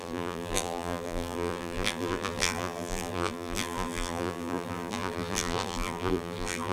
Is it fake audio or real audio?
fake